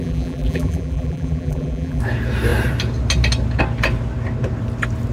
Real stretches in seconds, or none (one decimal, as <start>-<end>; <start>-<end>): 2.0-5.1

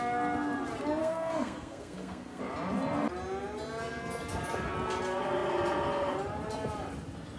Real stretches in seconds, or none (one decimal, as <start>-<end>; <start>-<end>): 0.0-1.0; 2.4-7.4

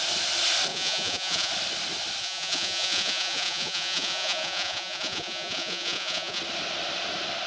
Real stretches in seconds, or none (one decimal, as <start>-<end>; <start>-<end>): 0.0-0.7; 1.5-2.2; 6.4-7.5

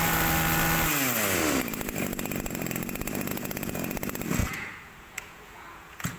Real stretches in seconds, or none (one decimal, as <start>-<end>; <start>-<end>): 0.0-3.3; 3.8-4.4

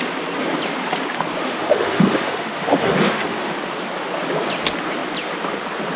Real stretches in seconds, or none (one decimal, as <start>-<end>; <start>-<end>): 0.0-1.4; 3.5-6.0

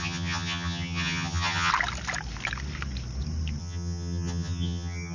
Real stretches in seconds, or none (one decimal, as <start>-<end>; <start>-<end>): 1.7-3.6